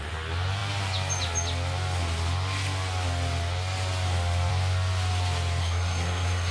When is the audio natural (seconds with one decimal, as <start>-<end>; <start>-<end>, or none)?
0.0-5.6